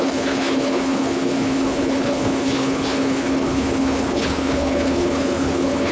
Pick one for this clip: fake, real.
fake